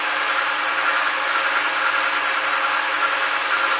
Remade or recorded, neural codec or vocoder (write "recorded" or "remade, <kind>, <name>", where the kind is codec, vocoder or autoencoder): recorded